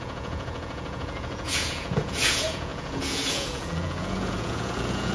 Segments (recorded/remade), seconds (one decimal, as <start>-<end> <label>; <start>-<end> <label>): 0.0-5.1 remade